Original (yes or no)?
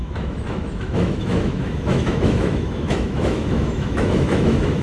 no